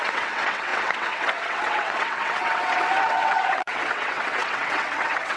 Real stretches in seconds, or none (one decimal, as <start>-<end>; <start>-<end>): none